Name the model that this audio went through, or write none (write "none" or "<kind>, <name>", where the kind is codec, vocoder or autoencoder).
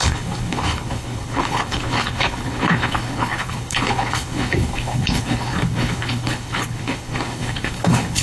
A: codec, HILCodec